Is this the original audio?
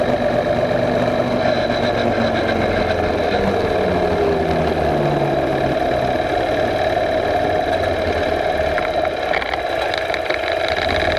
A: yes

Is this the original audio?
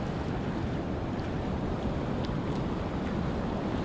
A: yes